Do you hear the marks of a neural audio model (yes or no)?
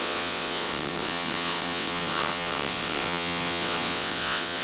yes